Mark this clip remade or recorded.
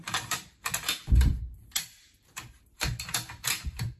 remade